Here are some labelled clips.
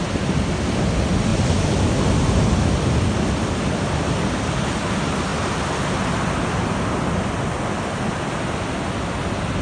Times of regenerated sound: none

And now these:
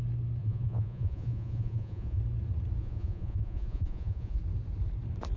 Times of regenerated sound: 0.4-2.2 (vocoder, Vocos); 2.8-4.4

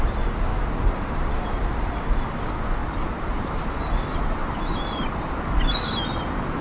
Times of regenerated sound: 0.5-1.7 (vocoder, BigVGAN v2); 2.8-3.7; 4.4-5.3

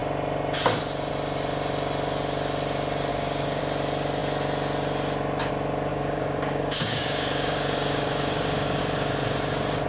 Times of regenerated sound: 3.1-3.6 (codec, DAC); 5.9-8.8

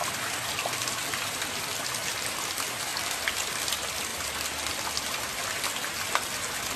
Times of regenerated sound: 0.0-0.5 (vocoder, BigVGAN v2)

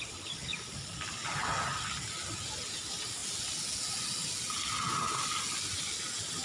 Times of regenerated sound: 1.2-1.8 (vocoder, BigVGAN v2)

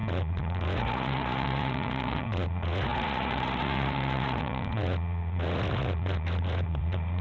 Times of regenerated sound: 0.0-7.2 (vocoder, Vocos)